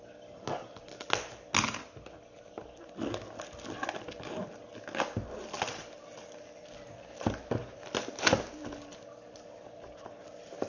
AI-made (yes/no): no